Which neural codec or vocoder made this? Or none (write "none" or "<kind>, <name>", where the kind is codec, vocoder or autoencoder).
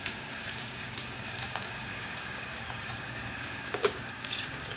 codec, DAC